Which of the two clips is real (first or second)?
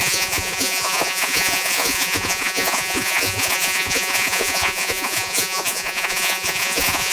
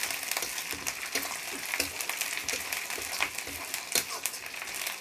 second